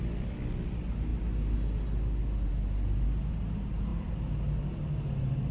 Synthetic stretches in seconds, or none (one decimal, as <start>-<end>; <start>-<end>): none

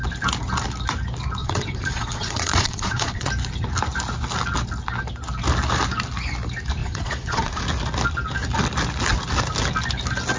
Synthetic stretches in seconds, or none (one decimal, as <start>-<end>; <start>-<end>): 1.4-3.3; 6.8-7.6

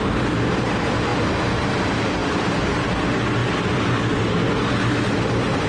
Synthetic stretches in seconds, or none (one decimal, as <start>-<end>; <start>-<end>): none

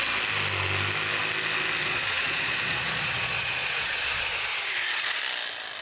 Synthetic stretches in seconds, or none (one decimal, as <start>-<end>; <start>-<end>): 1.8-5.2

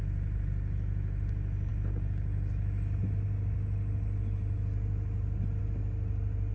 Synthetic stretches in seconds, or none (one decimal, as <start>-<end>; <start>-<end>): none

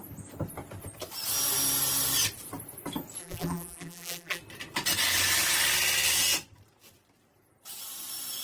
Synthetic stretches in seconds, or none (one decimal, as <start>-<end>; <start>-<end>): 3.2-4.4